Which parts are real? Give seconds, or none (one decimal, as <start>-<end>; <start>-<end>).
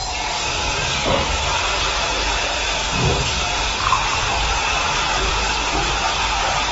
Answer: 0.0-6.7